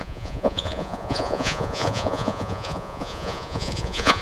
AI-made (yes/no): yes